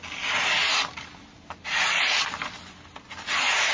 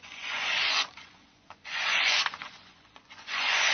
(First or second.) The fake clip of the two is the second